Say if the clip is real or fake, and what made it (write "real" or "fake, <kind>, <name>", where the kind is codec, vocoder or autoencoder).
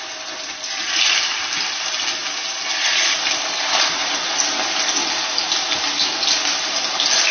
real